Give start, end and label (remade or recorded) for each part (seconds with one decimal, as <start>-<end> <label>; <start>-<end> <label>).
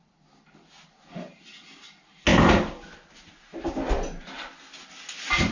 0.0-5.5 recorded